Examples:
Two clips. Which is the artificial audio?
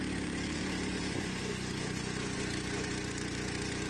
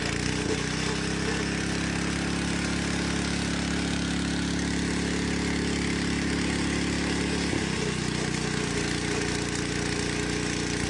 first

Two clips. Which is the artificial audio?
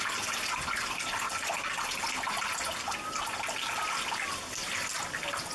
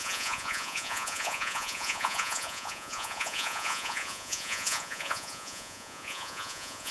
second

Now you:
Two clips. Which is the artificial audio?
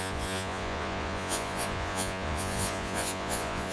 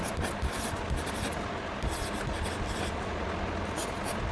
first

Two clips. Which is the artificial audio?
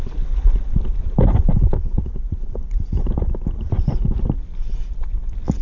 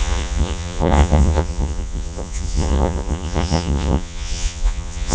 second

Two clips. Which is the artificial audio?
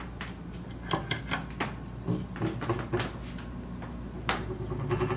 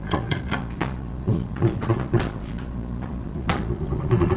second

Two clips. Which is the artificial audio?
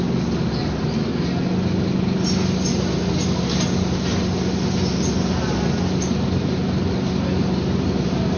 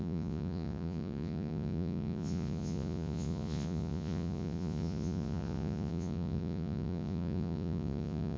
second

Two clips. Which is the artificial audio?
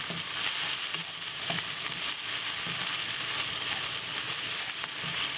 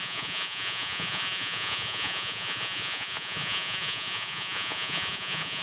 second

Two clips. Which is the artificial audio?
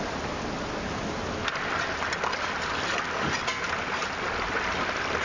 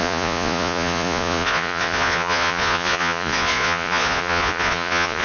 second